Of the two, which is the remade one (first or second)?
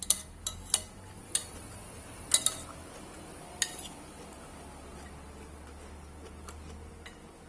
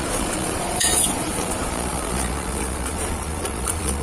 second